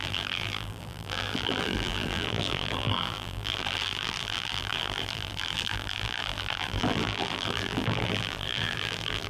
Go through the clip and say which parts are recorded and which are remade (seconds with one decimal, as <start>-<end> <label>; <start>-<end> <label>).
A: 0.0-9.3 remade